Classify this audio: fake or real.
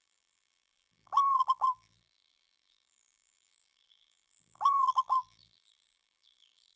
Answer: fake